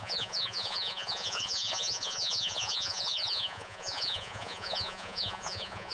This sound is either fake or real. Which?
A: fake